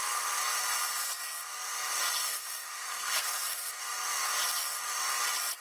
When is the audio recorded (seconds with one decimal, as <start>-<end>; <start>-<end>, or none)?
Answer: 0.0-2.2; 3.8-5.6

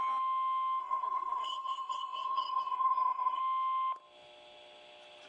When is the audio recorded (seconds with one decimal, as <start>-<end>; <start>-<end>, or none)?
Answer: 0.0-0.8; 3.4-5.3

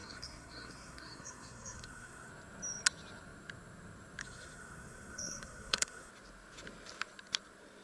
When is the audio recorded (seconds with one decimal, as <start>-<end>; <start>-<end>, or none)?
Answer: 2.3-4.2; 6.1-7.8

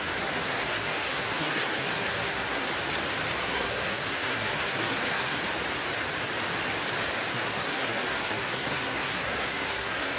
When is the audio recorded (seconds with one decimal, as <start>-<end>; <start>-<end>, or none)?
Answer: 2.7-3.4; 5.4-7.3

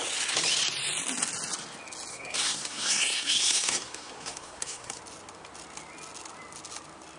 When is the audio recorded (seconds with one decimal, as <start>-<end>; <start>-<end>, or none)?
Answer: 0.0-2.1; 5.0-7.2